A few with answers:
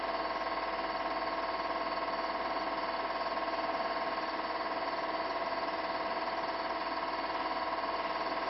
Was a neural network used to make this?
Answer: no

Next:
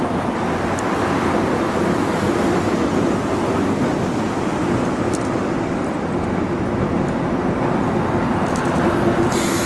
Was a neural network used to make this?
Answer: no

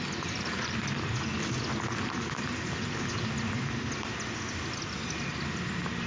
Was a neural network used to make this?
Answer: no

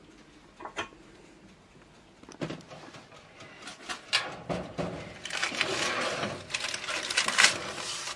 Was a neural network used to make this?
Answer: no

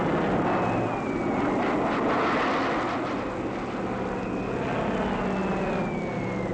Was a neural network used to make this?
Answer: no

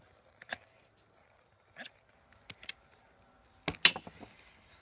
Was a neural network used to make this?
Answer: no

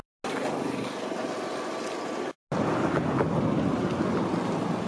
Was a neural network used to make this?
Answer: no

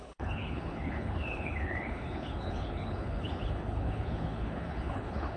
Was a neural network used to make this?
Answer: yes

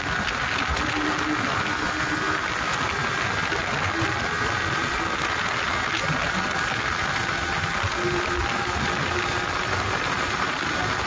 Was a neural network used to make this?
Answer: no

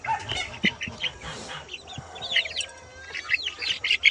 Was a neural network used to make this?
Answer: no